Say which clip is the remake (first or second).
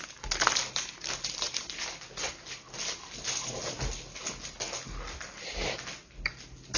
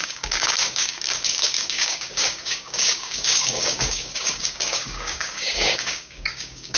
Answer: second